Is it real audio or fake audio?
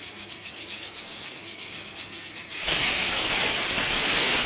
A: fake